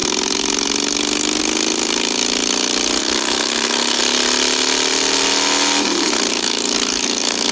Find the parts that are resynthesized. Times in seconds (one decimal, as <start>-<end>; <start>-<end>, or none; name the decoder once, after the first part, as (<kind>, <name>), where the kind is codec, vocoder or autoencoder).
3.0-4.0 (codec, DAC); 6.3-7.5